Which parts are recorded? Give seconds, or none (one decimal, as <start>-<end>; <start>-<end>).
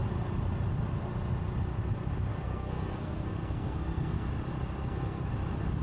0.0-2.3; 4.3-4.8; 5.3-5.8